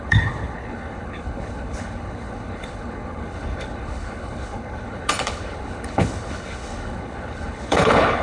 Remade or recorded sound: remade